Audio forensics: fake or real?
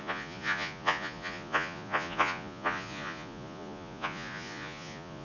fake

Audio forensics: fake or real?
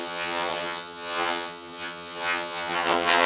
fake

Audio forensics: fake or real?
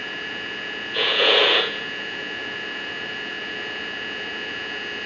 fake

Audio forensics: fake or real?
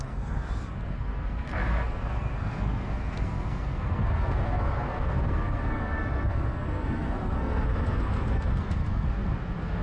fake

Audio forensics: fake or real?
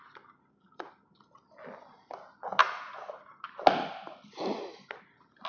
real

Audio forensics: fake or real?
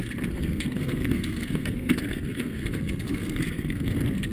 fake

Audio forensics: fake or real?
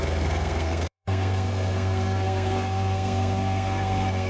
fake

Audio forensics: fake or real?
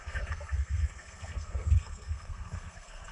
fake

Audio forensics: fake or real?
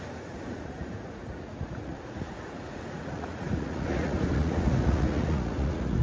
fake